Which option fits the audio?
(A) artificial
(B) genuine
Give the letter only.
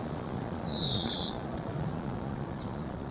A